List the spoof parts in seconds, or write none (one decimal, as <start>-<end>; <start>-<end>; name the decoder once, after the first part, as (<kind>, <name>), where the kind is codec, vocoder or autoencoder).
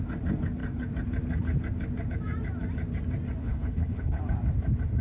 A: 3.4-4.2 (codec, HILCodec)